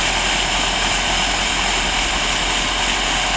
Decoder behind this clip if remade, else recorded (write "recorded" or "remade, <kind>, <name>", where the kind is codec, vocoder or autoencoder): recorded